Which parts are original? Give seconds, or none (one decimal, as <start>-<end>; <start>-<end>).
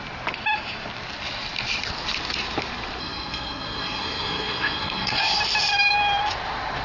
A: 0.0-3.0; 5.4-6.8